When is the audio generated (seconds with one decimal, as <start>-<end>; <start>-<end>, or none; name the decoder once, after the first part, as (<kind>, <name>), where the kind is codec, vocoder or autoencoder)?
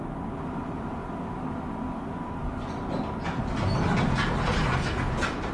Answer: none